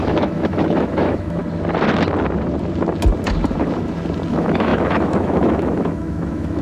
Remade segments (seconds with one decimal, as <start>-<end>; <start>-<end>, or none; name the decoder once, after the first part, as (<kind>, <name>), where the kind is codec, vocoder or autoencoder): 0.0-1.4 (autoencoder, DAC-VAE); 4.3-6.6